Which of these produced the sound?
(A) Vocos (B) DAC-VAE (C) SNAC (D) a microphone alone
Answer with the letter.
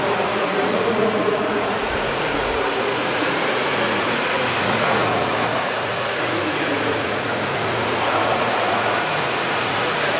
A